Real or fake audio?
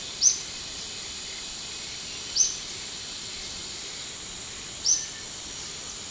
real